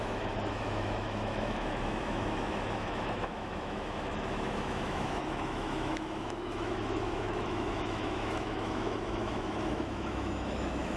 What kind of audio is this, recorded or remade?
remade